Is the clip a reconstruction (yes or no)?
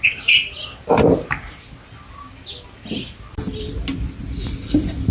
no